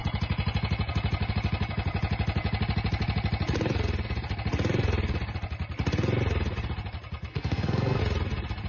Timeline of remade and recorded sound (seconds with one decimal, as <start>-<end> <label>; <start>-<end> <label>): 0.0-7.3 recorded; 7.3-8.0 remade; 8.0-8.7 recorded